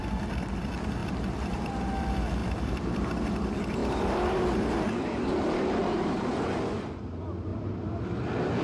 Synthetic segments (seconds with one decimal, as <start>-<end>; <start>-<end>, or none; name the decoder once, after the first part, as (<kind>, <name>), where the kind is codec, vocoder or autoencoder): 1.0-1.9 (vocoder, BigVGAN v2); 2.4-3.1; 3.8-6.9; 7.5-8.1